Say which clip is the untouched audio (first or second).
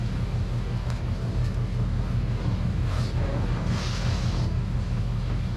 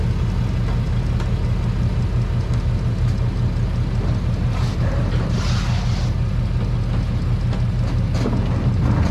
second